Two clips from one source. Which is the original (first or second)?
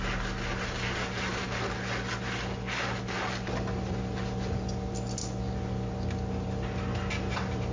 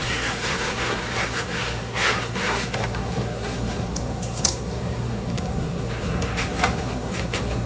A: first